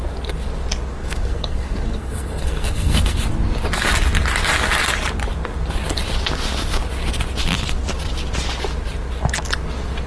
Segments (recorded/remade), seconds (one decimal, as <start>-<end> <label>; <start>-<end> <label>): 0.0-1.0 recorded; 1.0-3.3 remade; 3.3-10.1 recorded

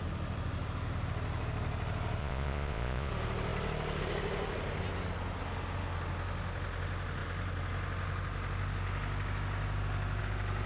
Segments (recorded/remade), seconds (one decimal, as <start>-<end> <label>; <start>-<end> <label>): 0.0-2.2 recorded; 2.2-3.1 remade; 3.1-10.7 recorded

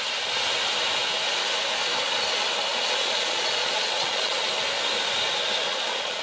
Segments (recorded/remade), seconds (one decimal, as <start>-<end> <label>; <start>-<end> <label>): 0.0-2.7 recorded; 2.7-4.5 remade; 4.5-5.7 recorded; 5.7-6.2 remade

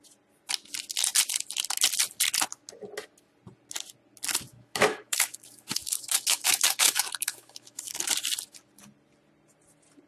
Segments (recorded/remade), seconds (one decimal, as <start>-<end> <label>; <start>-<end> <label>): 0.0-4.5 recorded; 4.5-8.0 remade; 8.0-10.1 recorded

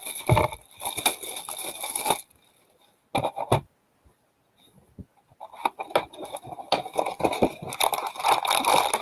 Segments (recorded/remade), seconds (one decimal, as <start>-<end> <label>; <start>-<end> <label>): 0.0-9.0 recorded

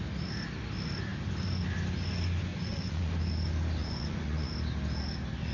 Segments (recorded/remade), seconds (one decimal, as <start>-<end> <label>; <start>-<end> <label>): 0.0-2.5 recorded; 2.5-3.1 remade; 3.1-3.8 recorded; 3.8-4.5 remade; 4.5-5.5 recorded

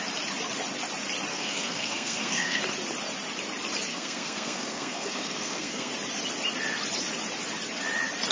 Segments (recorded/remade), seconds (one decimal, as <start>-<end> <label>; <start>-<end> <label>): 0.0-1.3 recorded; 1.3-2.6 remade; 2.6-3.9 recorded; 3.9-5.9 remade; 5.9-8.3 recorded

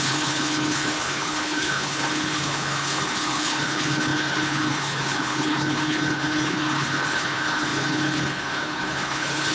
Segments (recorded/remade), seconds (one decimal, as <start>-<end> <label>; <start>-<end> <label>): 0.0-9.5 remade